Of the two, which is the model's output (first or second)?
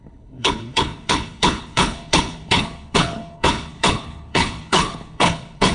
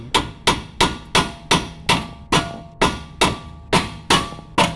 first